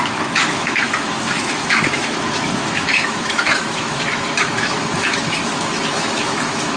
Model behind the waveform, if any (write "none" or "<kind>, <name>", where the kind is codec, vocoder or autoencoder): autoencoder, DAC-VAE